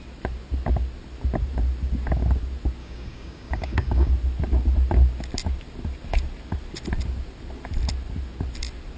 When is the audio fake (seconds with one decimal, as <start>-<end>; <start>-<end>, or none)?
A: 2.8-4.1